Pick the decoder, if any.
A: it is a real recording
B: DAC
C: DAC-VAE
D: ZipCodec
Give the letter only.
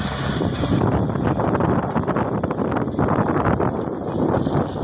A